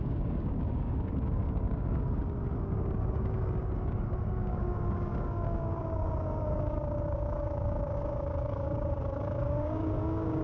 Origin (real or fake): fake